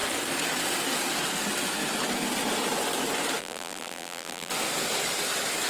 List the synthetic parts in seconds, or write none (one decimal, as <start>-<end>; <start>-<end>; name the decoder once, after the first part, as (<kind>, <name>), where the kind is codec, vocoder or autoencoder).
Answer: 3.4-4.5 (vocoder, BigVGAN v2)